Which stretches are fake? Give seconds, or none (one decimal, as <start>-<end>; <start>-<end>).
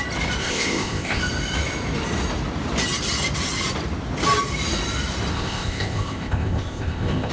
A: 0.4-1.2; 5.3-7.3